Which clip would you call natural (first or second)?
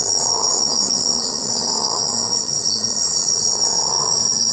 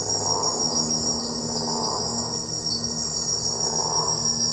second